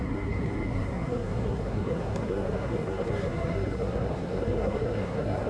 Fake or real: fake